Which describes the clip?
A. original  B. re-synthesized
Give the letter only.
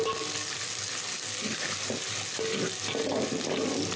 A